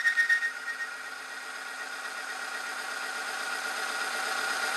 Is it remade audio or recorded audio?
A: recorded